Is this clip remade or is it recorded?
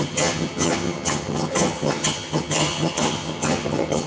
remade